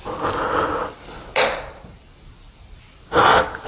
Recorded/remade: recorded